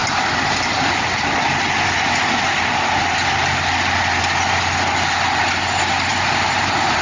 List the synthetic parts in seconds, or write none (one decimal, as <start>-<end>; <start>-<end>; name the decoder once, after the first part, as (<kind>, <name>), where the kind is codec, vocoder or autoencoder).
6.1-7.0 (vocoder, BigVGAN v2)